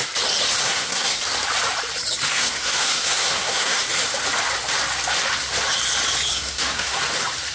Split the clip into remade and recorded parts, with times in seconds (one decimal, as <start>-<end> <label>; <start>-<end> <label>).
0.0-0.6 recorded; 0.6-1.2 remade; 1.2-2.3 recorded; 2.3-3.8 remade; 3.8-6.3 recorded; 6.3-7.0 remade; 7.0-7.5 recorded